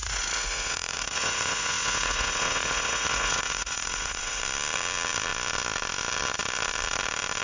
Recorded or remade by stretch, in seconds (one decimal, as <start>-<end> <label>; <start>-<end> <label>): 0.0-4.4 remade; 4.4-7.4 recorded